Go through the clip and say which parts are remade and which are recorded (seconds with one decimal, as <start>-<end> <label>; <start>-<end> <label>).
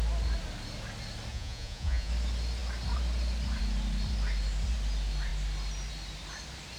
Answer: 0.0-1.3 recorded; 1.3-2.1 remade; 2.1-6.8 recorded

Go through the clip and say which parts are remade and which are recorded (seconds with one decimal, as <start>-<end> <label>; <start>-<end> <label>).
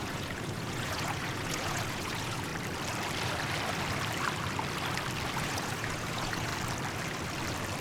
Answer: 0.0-2.5 remade; 2.5-5.4 recorded; 5.4-6.5 remade; 6.5-7.8 recorded